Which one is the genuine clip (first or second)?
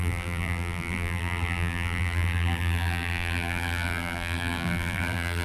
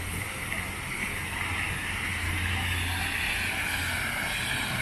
second